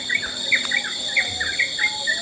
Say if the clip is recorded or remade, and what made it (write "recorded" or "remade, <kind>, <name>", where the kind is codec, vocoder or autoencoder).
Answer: recorded